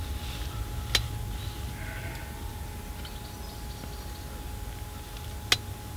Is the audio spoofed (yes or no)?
no